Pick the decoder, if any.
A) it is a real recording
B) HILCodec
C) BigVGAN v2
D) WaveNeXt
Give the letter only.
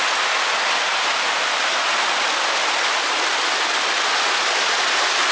A